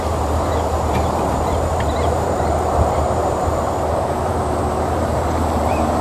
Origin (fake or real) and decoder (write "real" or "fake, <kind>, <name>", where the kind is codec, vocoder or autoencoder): fake, vocoder, BigVGAN v2